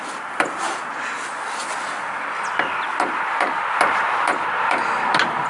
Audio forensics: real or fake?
real